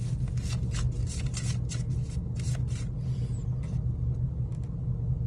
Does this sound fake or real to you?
real